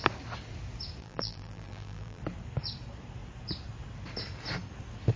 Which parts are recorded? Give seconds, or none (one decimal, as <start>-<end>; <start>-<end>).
0.0-1.0; 2.2-5.2